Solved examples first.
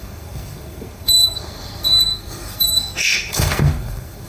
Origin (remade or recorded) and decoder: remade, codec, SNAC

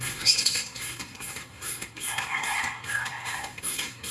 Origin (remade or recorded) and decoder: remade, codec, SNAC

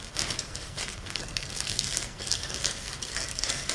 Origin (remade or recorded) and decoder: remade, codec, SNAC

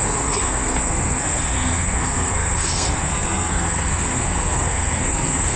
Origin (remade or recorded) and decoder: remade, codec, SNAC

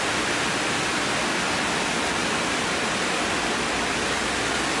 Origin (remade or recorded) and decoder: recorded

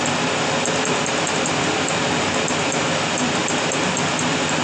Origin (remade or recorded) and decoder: recorded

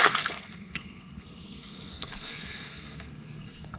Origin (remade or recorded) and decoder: remade, codec, SNAC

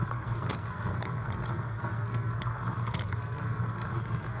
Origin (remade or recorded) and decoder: remade, codec, SNAC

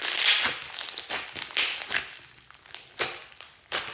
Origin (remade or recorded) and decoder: recorded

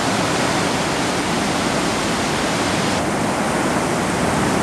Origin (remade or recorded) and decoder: recorded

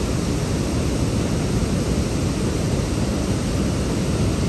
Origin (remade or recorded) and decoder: recorded